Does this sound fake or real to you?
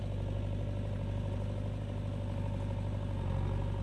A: real